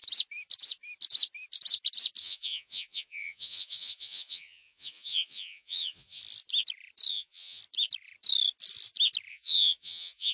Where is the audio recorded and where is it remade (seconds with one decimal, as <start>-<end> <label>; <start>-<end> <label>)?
0.0-2.2 recorded; 2.2-6.2 remade; 6.2-7.1 recorded; 7.1-7.6 remade; 7.6-9.3 recorded; 9.3-10.3 remade